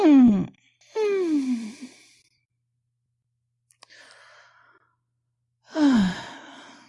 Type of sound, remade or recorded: recorded